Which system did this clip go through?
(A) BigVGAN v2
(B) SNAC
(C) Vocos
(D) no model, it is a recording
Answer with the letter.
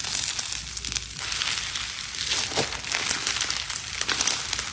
D